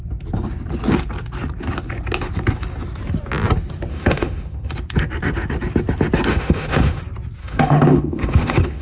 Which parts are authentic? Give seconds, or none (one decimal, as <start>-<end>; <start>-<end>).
0.0-3.9; 4.7-6.3; 7.0-7.4